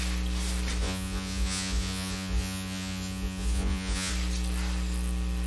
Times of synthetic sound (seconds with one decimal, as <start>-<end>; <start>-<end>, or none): 0.8-4.1